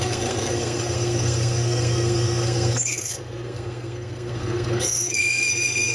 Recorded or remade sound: remade